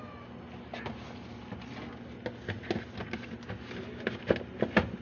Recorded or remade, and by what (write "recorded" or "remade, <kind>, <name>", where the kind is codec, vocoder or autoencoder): recorded